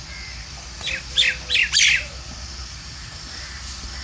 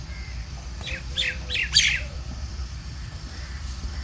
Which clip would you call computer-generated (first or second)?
second